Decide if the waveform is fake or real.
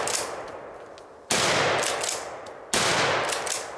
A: real